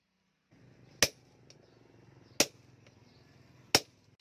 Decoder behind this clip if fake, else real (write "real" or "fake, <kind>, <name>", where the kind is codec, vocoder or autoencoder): real